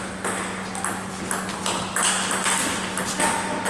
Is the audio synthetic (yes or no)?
no